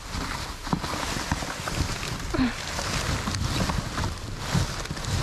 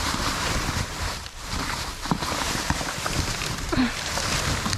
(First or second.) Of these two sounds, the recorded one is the first